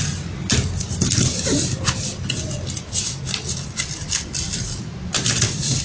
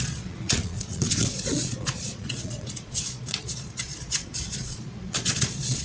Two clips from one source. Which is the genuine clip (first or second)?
first